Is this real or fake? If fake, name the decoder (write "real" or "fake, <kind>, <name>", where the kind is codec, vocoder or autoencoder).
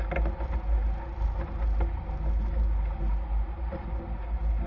real